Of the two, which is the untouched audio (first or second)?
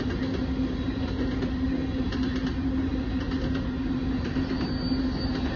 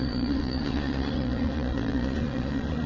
first